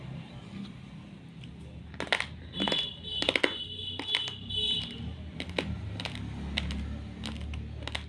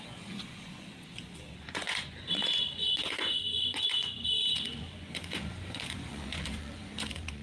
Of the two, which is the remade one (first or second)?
second